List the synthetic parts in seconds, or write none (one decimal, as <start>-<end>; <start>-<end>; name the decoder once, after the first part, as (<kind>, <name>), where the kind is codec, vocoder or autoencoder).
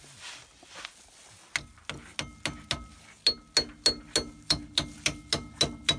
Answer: none